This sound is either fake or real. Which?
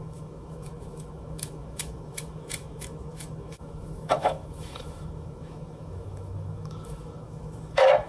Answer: fake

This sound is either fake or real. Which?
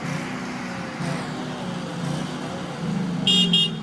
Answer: real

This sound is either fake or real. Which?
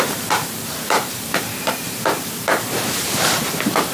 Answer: fake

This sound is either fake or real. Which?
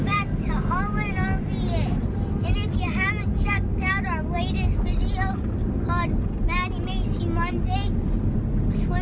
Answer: real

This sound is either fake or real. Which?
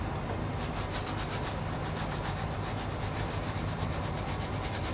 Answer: real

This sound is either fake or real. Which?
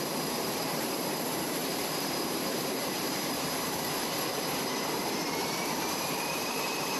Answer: fake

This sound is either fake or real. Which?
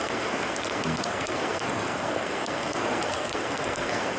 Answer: fake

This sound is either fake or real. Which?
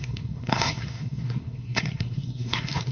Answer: fake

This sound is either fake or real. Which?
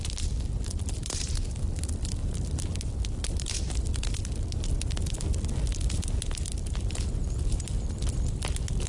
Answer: real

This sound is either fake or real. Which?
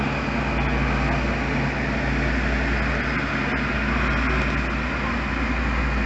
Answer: real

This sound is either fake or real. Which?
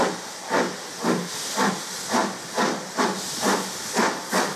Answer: real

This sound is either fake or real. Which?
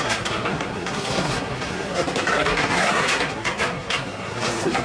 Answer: fake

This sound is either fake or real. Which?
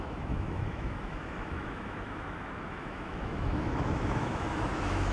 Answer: fake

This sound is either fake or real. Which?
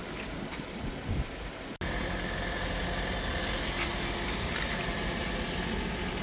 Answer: real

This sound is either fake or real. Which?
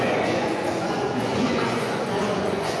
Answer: fake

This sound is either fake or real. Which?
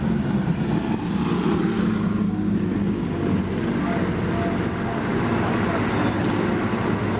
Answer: real